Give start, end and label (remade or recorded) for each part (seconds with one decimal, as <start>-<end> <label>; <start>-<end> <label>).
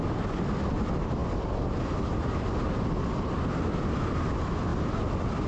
0.0-5.5 recorded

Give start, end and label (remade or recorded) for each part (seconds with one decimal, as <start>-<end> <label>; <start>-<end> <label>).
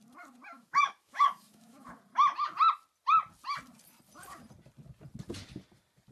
0.0-0.5 recorded; 0.5-2.0 remade; 2.0-6.1 recorded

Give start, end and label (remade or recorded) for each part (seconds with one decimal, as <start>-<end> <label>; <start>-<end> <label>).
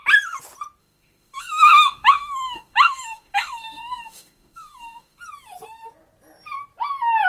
0.0-0.8 recorded; 0.8-5.2 remade; 5.2-7.3 recorded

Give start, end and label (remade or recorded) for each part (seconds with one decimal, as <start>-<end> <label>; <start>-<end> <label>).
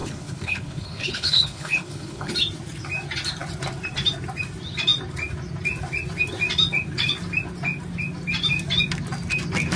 0.0-2.3 remade; 2.3-9.8 recorded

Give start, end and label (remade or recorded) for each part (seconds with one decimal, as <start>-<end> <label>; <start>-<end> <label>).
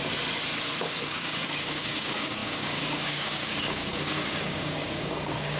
0.0-1.0 recorded; 1.0-5.6 remade